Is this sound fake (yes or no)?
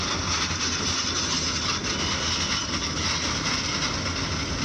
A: no